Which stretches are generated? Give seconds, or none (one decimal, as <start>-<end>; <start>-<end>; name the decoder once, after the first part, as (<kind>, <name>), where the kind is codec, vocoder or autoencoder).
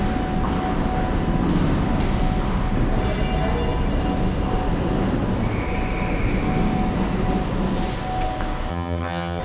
8.7-9.4 (vocoder, HiFi-GAN)